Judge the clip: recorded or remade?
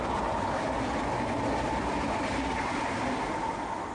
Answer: recorded